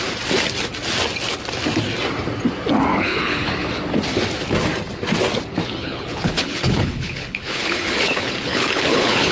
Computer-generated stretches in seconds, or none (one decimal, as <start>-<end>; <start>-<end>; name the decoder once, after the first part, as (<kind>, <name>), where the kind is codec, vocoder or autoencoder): 2.9-3.5 (codec, HILCodec); 5.8-9.3